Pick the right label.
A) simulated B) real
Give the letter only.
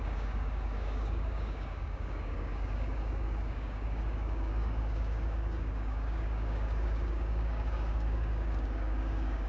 A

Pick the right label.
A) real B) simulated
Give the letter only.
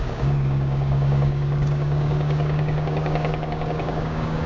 B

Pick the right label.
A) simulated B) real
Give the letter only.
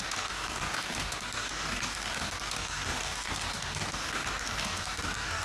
A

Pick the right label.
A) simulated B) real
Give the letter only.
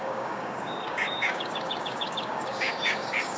A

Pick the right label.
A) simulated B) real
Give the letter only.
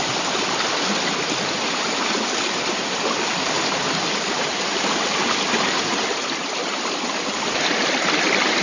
B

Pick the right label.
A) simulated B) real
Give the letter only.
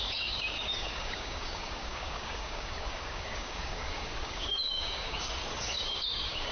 A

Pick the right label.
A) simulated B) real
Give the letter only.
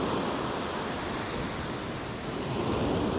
B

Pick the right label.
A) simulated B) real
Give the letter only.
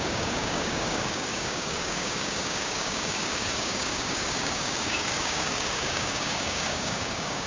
A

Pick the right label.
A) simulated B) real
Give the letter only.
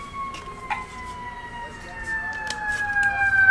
B